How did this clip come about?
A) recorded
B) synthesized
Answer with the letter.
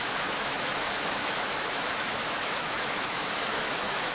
B